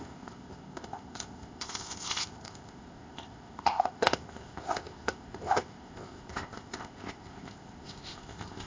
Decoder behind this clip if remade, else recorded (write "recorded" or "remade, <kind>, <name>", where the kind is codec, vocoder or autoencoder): remade, codec, ZipCodec